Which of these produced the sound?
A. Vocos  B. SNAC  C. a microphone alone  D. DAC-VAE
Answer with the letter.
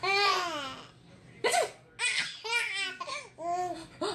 C